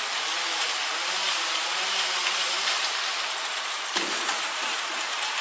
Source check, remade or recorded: remade